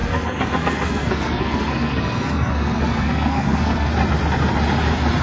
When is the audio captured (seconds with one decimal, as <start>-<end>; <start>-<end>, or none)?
3.9-5.2